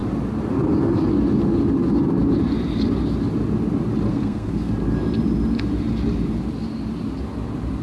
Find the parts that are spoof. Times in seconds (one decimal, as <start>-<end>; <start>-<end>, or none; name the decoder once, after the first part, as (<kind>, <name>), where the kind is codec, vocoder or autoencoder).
4.1-4.7 (codec, SNAC)